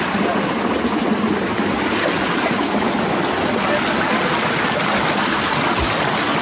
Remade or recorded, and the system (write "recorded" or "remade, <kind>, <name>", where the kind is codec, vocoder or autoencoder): recorded